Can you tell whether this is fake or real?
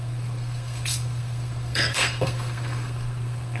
fake